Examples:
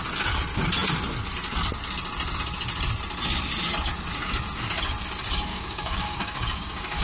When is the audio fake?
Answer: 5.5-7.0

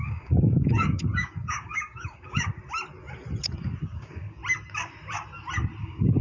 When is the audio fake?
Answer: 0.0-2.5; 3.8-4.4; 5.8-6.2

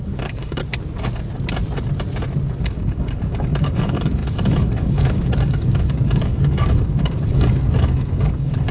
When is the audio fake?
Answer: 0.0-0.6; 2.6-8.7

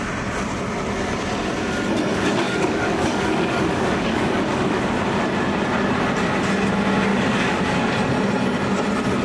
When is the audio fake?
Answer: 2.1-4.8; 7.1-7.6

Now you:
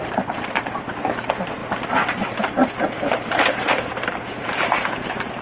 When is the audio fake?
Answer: none

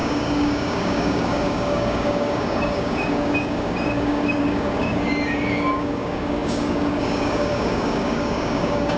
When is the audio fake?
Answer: 0.0-9.0